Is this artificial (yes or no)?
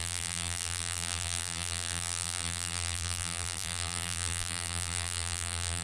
yes